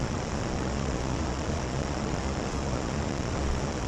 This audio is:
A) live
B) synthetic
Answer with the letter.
B